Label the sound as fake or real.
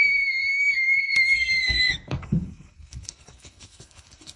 fake